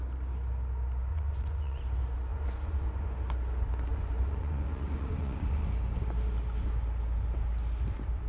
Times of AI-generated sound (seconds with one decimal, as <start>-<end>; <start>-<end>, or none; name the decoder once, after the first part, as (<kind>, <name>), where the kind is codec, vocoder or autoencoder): 1.1-1.8 (vocoder, Vocos); 2.3-3.1; 3.9-5.7